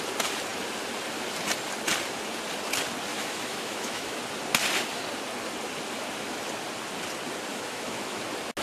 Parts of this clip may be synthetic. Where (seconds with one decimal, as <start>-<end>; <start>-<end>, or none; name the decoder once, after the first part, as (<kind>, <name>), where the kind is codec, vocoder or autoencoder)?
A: 3.1-4.2 (autoencoder, DAC-VAE); 7.5-8.2

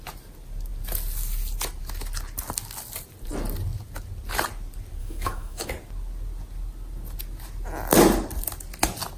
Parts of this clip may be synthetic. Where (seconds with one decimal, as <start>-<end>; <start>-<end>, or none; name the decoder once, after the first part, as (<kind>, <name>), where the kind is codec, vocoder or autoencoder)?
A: 5.0-5.7 (autoencoder, DAC-VAE)

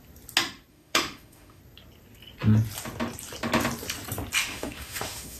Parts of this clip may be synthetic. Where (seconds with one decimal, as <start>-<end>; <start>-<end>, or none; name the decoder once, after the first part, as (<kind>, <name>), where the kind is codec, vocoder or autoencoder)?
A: 0.7-1.6 (autoencoder, DAC-VAE); 4.4-5.4